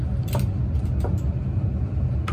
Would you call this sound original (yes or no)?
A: yes